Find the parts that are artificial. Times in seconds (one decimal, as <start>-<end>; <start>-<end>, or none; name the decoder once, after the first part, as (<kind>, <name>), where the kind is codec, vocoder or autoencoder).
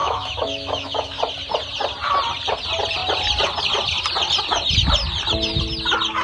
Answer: 0.0-1.2 (autoencoder, DAC-VAE)